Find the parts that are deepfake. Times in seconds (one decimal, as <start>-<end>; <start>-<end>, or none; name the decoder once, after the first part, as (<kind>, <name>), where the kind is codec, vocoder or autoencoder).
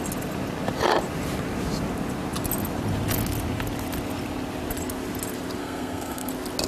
5.6-6.3 (codec, SNAC)